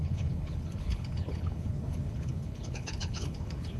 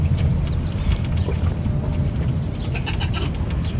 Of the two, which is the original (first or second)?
second